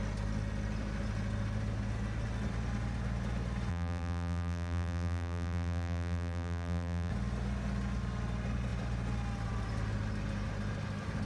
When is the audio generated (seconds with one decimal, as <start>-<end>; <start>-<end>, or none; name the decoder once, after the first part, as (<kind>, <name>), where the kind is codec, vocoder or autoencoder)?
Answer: 3.7-7.1 (vocoder, BigVGAN v2)